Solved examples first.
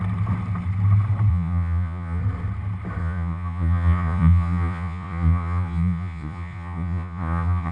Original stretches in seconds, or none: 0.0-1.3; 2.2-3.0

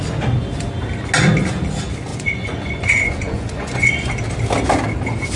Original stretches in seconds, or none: 0.0-2.1; 4.1-5.4

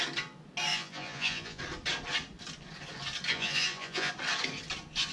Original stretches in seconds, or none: 0.0-0.7; 1.6-3.3; 4.1-5.1

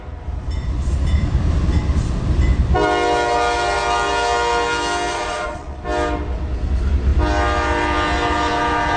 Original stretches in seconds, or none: 0.0-5.1; 5.8-9.0

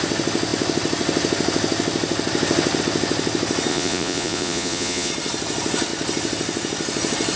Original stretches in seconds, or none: 0.0-3.7; 5.1-7.4

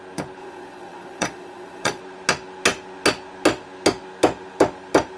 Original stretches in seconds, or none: 0.0-0.4; 2.0-5.2